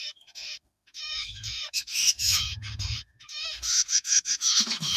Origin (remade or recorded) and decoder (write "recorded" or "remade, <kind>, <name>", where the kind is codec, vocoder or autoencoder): remade, autoencoder, DAC-VAE